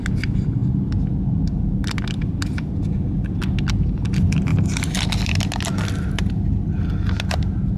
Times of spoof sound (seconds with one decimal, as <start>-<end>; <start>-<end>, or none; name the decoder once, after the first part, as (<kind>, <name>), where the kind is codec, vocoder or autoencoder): none